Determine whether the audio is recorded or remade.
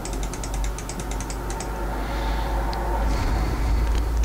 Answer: recorded